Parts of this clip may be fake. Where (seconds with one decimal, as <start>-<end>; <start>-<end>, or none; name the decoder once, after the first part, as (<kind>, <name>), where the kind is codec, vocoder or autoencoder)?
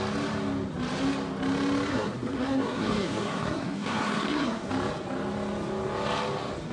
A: 1.9-4.7 (codec, SNAC)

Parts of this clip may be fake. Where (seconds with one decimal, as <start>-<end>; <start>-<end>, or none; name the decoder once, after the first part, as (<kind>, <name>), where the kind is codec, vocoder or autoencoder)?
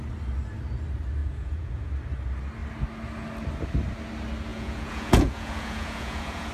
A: 1.2-1.9 (vocoder, Vocos); 4.5-6.5